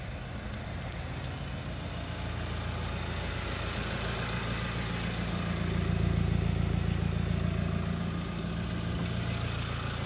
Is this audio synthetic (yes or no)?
no